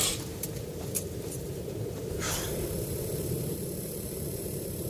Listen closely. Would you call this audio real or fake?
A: fake